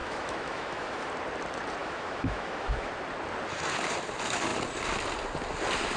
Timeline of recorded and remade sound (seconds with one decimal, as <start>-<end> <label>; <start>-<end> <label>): 0.0-1.1 remade; 1.1-1.8 recorded; 1.8-2.9 remade; 2.9-6.0 recorded